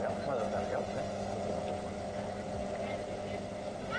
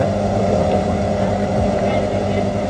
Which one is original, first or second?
first